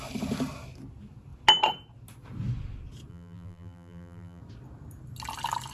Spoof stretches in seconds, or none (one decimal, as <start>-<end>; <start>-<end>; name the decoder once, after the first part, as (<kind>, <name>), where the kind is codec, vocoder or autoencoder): 3.1-4.4 (vocoder, BigVGAN v2)